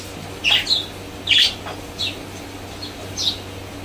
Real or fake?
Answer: real